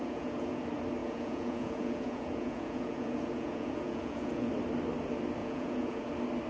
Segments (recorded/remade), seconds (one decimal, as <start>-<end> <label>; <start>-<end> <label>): 0.0-0.6 remade; 0.6-1.0 recorded; 1.0-4.5 remade; 4.5-5.4 recorded; 5.4-6.1 remade; 6.1-6.5 recorded

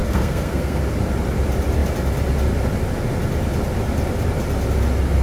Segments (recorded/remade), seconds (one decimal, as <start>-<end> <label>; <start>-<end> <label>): 0.0-0.8 remade; 0.8-5.2 recorded